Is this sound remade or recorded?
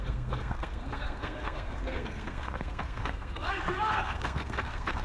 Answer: remade